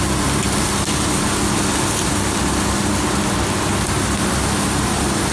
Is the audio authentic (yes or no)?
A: yes